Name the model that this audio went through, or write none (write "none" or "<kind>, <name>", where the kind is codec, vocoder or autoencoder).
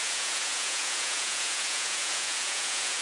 vocoder, Vocos